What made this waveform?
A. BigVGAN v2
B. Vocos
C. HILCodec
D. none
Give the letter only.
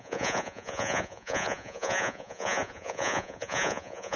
B